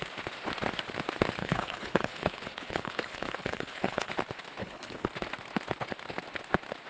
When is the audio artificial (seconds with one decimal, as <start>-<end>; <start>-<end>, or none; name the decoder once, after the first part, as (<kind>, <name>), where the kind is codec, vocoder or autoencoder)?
1.4-4.1 (codec, HILCodec); 4.6-5.1